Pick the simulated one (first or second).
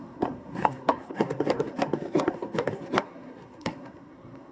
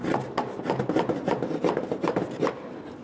first